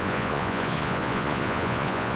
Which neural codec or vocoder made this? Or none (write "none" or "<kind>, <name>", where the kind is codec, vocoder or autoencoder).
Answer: vocoder, Vocos